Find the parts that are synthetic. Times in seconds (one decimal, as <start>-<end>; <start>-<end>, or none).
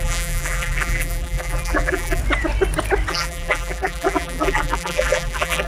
0.0-2.2; 3.1-5.7